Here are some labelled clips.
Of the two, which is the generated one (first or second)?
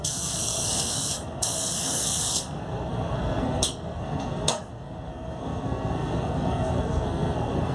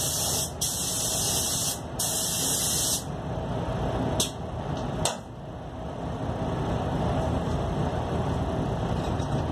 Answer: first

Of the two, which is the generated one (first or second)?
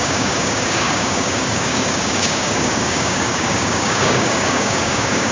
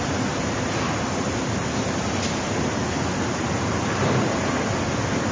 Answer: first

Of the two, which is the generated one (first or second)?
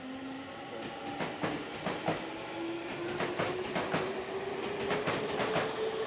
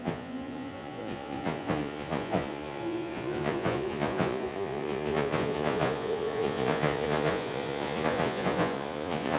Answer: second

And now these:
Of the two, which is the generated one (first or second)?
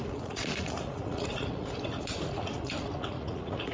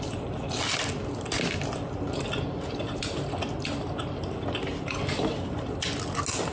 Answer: first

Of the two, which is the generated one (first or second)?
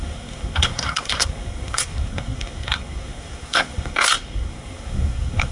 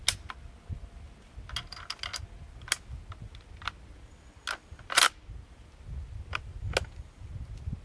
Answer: first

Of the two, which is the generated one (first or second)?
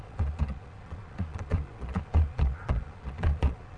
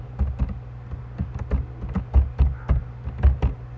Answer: first